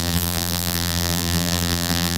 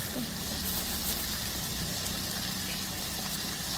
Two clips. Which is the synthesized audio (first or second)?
first